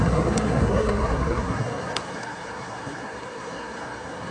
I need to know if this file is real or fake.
fake